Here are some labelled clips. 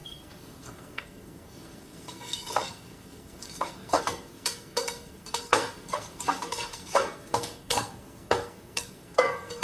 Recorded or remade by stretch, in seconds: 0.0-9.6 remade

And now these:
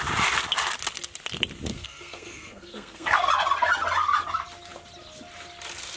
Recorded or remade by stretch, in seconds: 0.0-1.7 recorded; 1.7-3.3 remade; 3.3-6.0 recorded

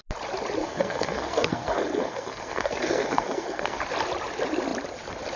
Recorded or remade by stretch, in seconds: 0.0-0.6 recorded; 0.6-3.8 remade; 3.8-5.4 recorded